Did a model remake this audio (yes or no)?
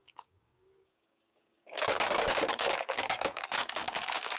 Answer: yes